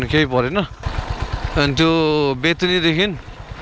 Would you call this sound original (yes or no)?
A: yes